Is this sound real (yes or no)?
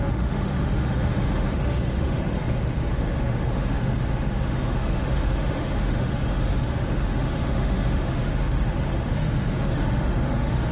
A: no